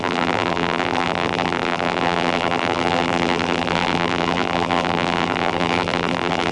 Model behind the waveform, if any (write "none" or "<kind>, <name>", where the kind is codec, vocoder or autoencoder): vocoder, BigVGAN v2